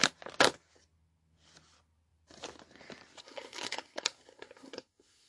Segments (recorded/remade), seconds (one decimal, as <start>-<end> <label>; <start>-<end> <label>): 0.0-3.2 recorded; 3.2-5.3 remade